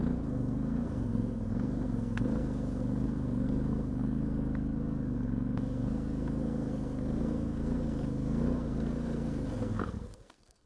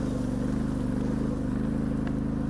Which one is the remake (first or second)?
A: first